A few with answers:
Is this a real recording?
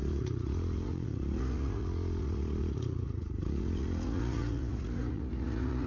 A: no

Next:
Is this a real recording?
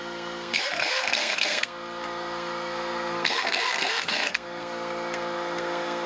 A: no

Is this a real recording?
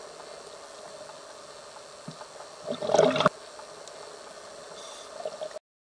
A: yes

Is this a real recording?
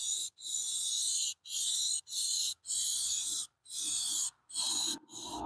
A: yes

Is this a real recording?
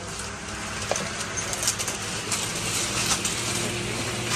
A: yes